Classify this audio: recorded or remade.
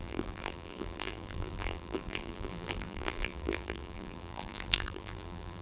remade